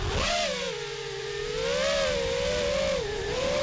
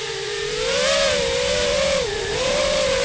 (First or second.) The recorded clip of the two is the first